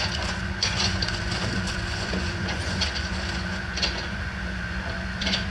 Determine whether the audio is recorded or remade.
remade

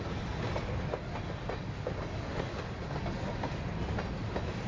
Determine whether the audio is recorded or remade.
recorded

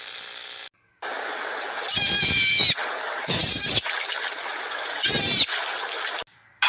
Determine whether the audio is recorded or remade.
recorded